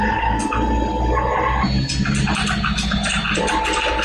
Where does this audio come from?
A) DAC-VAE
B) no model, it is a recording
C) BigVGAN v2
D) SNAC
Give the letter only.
B